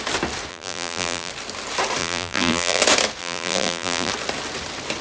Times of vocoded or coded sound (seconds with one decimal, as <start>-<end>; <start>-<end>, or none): 0.5-1.3; 2.0-2.8; 3.2-4.1